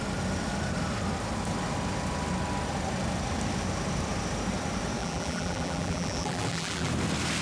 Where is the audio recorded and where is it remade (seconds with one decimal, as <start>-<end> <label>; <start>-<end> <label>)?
0.0-5.0 recorded; 5.0-6.9 remade; 6.9-7.4 recorded